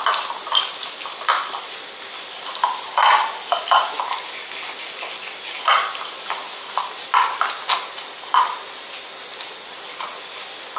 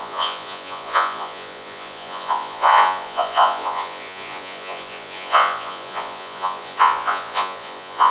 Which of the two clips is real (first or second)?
first